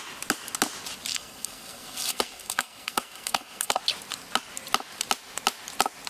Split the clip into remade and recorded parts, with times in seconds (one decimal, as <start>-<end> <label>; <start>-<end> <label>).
0.0-1.1 recorded; 1.1-3.8 remade; 3.8-6.1 recorded